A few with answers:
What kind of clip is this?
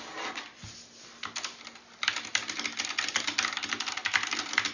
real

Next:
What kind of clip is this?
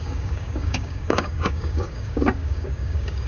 fake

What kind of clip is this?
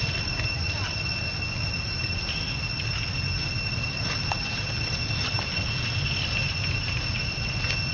real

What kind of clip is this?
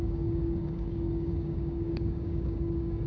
fake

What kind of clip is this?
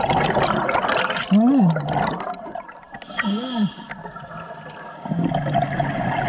real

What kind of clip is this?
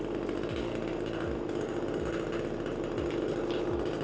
real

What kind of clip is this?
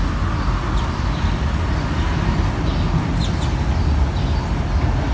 real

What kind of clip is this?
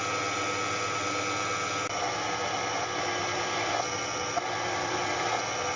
real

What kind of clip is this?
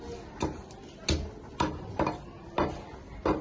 real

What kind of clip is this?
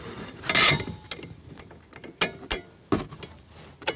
real